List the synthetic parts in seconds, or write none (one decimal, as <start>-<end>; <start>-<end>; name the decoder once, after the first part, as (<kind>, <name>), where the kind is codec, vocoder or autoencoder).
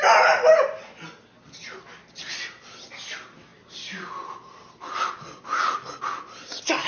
none